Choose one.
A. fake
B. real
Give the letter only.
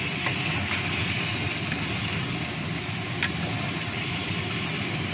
B